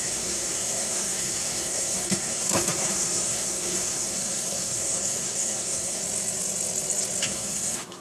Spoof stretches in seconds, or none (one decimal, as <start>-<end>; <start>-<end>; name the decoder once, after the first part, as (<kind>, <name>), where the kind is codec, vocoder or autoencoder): 0.0-6.0 (codec, SNAC); 7.2-8.0